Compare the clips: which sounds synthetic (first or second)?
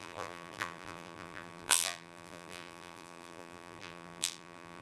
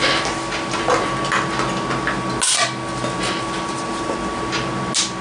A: first